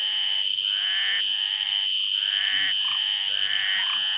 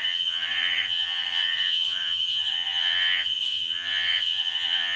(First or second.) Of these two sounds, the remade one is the second